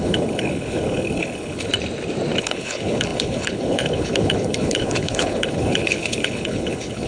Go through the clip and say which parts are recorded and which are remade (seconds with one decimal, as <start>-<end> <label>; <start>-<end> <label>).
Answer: 0.0-1.7 remade; 1.7-2.4 recorded; 2.4-7.1 remade